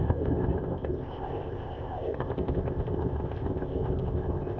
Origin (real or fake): fake